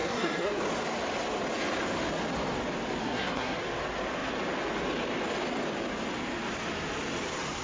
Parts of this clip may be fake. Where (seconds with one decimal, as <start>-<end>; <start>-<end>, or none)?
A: 0.0-0.6; 3.0-3.6